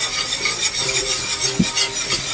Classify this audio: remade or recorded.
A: recorded